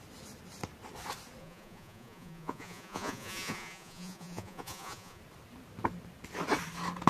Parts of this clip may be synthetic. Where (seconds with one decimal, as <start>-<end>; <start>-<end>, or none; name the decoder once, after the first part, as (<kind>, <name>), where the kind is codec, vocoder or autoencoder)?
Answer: 1.4-5.2 (vocoder, Vocos)